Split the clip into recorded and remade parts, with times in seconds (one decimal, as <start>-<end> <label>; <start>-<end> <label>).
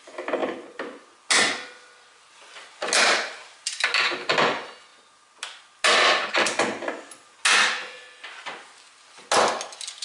0.0-10.0 recorded